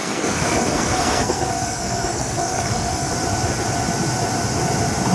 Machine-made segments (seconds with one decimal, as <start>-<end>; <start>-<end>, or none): 0.0-3.1